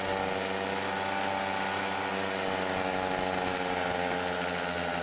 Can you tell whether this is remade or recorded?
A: recorded